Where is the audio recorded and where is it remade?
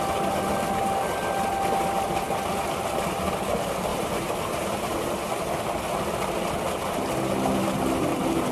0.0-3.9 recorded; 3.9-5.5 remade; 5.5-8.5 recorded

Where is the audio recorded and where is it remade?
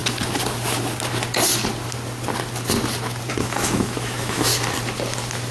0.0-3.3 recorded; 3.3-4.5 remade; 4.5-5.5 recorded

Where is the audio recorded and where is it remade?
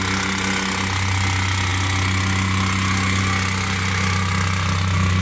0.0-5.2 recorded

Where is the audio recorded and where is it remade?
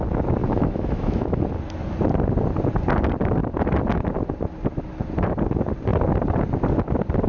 0.0-0.4 recorded; 0.4-1.4 remade; 1.4-7.3 recorded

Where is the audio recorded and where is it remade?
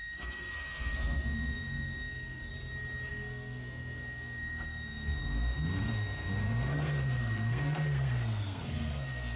0.0-2.5 remade; 2.5-3.1 recorded; 3.1-9.4 remade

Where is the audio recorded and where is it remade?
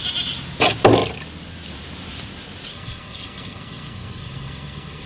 0.0-2.7 recorded; 2.7-5.1 remade